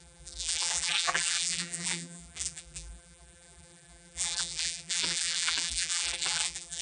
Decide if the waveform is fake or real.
fake